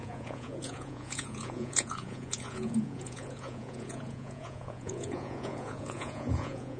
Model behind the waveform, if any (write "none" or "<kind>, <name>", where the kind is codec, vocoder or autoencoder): vocoder, Vocos